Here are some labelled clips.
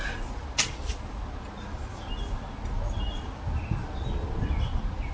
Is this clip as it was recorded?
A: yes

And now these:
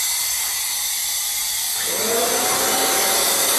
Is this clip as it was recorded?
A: yes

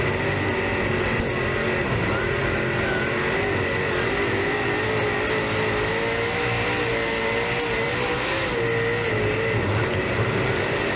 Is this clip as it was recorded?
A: yes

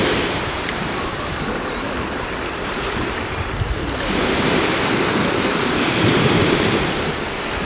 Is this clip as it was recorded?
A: no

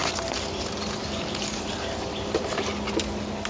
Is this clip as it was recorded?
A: yes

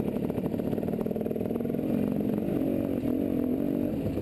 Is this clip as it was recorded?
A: yes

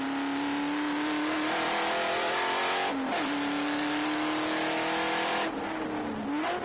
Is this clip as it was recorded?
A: no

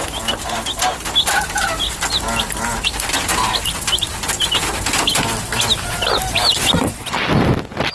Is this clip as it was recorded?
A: yes